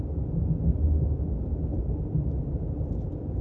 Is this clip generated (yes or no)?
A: no